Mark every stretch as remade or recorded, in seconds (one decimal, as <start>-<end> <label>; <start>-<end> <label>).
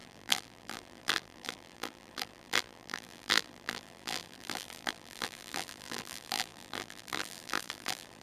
0.0-8.2 remade